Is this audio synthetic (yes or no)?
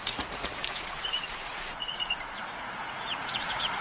yes